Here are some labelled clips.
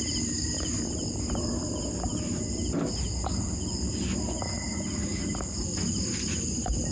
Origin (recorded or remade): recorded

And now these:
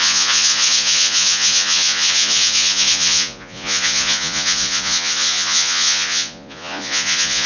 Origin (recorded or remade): remade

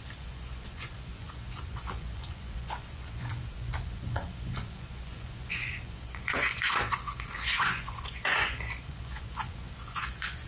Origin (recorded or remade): remade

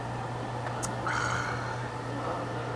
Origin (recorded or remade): recorded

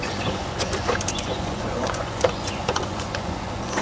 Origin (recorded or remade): remade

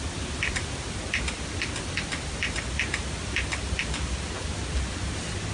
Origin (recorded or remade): recorded